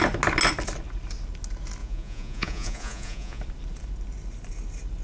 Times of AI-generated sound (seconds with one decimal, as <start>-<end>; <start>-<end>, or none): 1.8-3.4